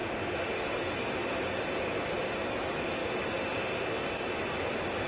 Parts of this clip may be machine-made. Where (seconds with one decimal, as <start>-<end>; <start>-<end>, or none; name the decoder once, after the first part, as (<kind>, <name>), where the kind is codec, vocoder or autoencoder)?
0.6-1.2 (autoencoder, DAC-VAE); 2.4-3.0; 4.2-5.1